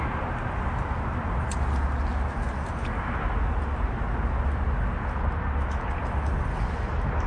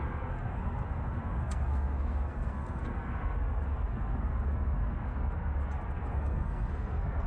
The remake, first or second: second